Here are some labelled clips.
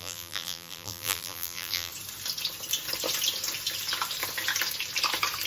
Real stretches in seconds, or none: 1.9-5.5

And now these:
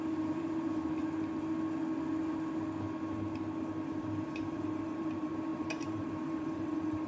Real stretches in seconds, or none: 1.0-4.0

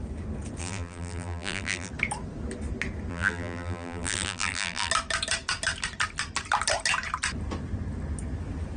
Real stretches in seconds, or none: 0.0-0.6; 1.9-3.1; 4.9-8.8

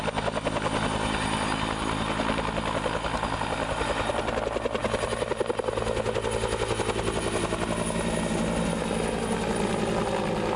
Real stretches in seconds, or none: 0.0-10.6

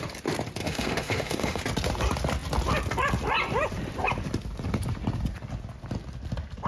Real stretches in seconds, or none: 0.0-0.6; 1.6-6.7

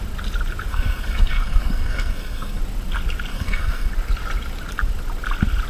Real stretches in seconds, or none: 0.0-0.7; 2.6-3.3; 3.9-5.7

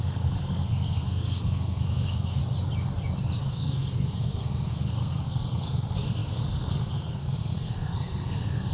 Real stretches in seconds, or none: 2.4-3.5